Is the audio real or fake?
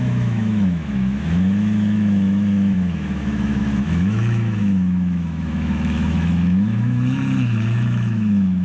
fake